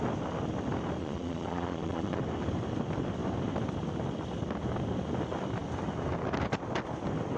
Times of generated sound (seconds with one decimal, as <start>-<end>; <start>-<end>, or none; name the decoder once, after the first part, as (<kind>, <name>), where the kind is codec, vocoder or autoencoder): 1.0-2.2 (vocoder, Vocos)